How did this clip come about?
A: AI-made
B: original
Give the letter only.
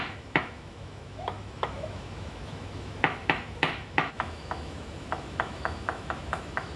A